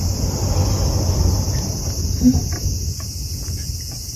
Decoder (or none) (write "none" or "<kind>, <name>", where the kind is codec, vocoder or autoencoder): none